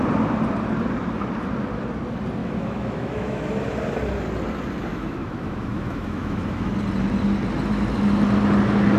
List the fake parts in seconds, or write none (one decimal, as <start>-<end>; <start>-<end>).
2.4-3.6; 4.9-6.7

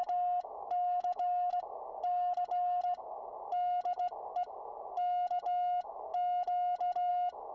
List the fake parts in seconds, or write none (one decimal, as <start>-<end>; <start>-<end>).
0.6-1.6

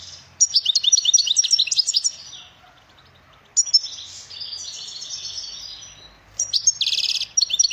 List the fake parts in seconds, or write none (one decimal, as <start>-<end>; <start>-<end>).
none

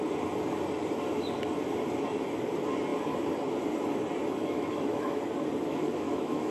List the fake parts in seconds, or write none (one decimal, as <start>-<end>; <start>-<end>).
4.4-5.2; 5.7-6.5

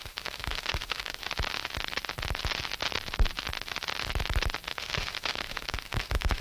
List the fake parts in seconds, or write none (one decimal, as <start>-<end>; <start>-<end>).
0.0-1.2; 4.7-6.4

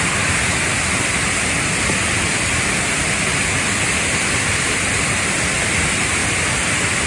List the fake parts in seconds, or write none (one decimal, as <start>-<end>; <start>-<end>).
none